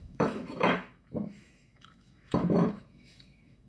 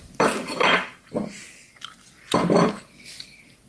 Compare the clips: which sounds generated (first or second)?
first